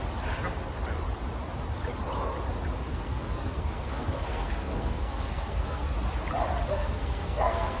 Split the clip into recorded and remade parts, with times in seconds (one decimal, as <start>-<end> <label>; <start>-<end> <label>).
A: 0.0-2.9 recorded; 2.9-5.9 remade; 5.9-6.7 recorded; 6.7-7.8 remade